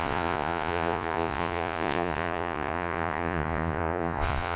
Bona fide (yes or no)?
no